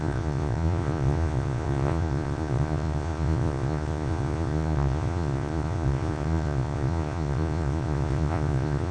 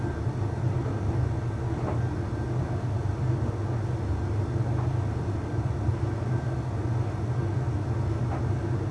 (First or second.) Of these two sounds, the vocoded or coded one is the first